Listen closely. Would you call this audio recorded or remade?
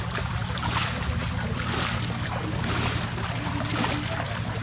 recorded